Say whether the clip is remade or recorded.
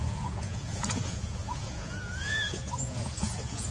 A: remade